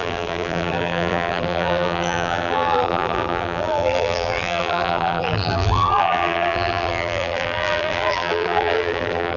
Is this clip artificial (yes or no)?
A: yes